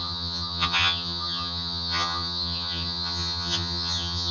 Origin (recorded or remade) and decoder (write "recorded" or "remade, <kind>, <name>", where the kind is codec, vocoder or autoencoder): remade, vocoder, HiFi-GAN